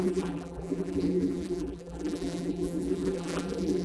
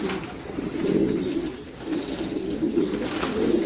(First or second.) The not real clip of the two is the first